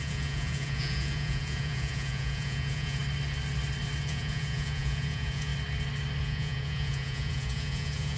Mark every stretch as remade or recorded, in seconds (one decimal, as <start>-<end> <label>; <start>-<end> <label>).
0.0-3.0 remade; 3.0-4.0 recorded; 4.0-5.5 remade; 5.5-6.2 recorded; 6.2-8.2 remade